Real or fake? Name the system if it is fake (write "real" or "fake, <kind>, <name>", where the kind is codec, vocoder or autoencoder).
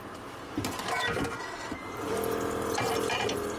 real